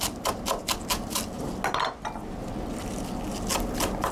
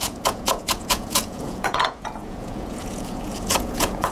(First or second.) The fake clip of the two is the second